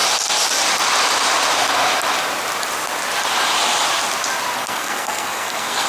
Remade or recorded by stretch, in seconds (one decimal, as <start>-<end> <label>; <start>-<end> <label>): 0.0-4.6 recorded; 4.6-5.9 remade